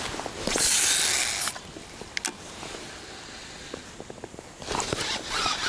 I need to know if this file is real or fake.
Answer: real